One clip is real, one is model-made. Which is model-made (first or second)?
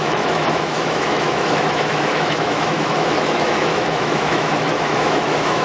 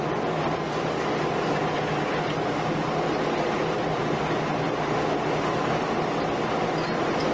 first